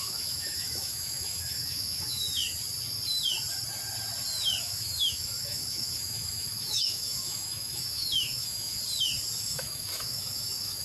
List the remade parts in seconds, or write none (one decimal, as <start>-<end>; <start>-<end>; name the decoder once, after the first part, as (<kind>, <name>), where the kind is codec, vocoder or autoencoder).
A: 0.0-2.4 (autoencoder, DAC-VAE); 4.6-8.8; 9.4-10.8